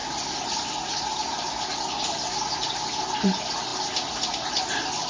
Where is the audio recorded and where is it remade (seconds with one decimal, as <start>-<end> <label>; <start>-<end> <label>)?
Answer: 0.0-5.1 recorded